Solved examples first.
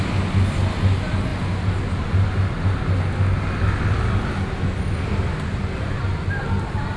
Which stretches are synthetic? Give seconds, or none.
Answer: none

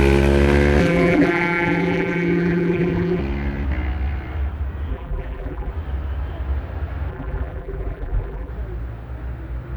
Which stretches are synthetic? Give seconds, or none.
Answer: 0.8-3.2 (vocoder, BigVGAN v2); 4.9-5.7; 7.1-8.5

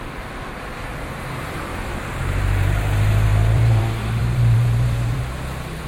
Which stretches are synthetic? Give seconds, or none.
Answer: 1.7-2.4 (vocoder, BigVGAN v2); 3.3-3.8; 4.2-5.2

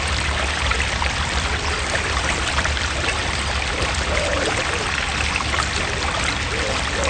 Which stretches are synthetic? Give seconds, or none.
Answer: 0.0-4.3 (vocoder, BigVGAN v2); 5.8-7.1

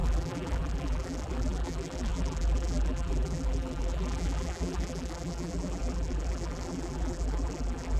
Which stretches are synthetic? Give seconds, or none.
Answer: 0.0-8.0 (vocoder, BigVGAN v2)

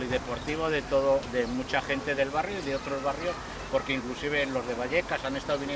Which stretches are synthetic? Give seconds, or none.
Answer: none